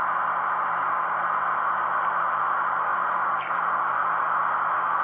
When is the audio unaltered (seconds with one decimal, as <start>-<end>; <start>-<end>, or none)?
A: 0.0-5.0